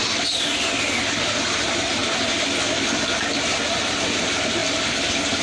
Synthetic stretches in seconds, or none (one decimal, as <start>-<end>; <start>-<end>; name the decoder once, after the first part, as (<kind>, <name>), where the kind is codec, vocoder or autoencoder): none